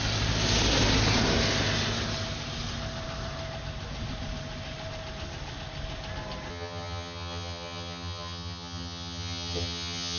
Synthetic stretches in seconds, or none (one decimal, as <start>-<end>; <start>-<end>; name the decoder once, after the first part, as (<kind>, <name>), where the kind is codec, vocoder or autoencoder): 6.5-10.2 (vocoder, HiFi-GAN)

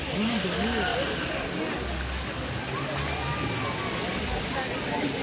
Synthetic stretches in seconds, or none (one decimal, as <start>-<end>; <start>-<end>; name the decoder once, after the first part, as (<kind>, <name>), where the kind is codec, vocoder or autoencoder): none